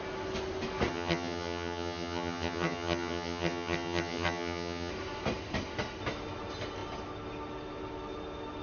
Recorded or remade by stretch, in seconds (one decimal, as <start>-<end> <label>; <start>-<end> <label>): 0.0-0.9 recorded; 0.9-4.9 remade; 4.9-8.6 recorded